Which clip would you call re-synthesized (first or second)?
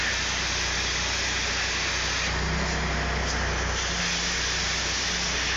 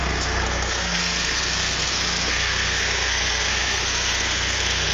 second